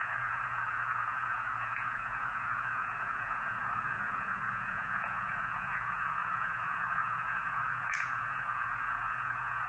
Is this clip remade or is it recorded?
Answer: remade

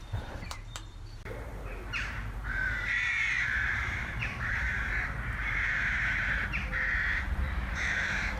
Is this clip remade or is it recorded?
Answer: remade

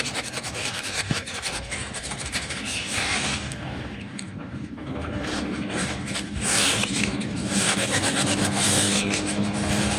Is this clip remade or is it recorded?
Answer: remade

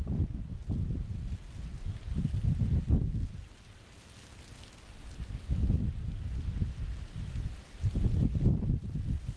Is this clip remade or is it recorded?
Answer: recorded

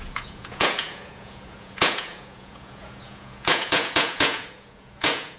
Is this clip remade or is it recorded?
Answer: remade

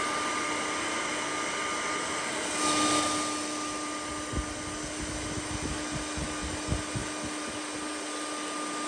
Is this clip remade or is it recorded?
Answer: recorded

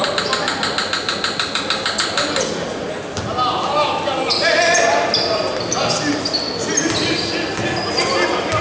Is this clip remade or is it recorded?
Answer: recorded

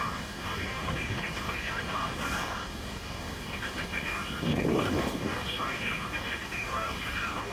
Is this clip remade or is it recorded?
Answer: remade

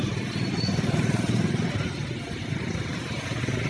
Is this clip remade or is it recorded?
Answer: recorded